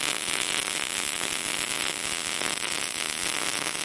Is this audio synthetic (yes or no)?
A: no